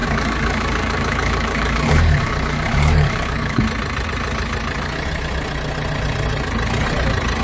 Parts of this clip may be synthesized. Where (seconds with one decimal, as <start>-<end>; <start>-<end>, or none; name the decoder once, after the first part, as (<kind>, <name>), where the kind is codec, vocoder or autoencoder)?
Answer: 0.0-3.6 (codec, DAC)